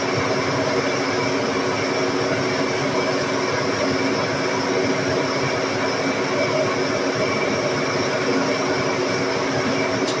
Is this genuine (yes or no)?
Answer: yes